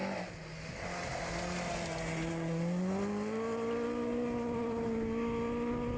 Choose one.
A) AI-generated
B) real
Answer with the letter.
B